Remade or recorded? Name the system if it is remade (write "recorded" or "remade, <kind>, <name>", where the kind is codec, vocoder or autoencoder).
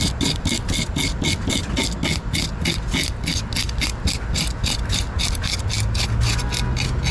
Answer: recorded